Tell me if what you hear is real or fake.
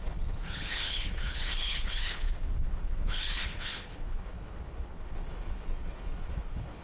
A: fake